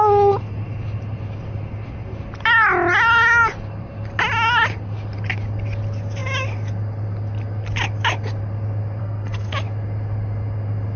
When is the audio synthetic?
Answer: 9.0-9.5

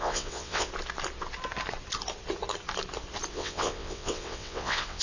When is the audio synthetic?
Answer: 0.0-0.7; 3.3-5.0

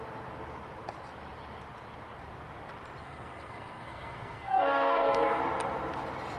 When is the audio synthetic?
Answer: 3.0-5.4

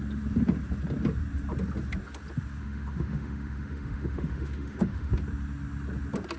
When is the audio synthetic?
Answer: 2.6-5.1

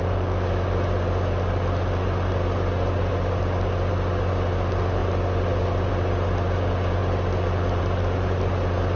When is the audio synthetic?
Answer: none